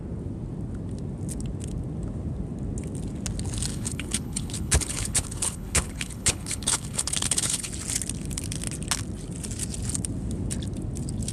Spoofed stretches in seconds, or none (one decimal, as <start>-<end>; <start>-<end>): 3.7-7.7